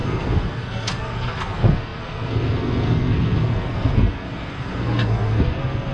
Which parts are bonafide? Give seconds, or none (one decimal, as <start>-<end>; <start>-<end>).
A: none